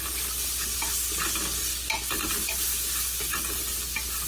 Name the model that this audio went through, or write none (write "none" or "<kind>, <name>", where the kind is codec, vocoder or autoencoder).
none